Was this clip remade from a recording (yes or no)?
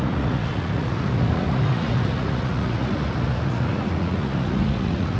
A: yes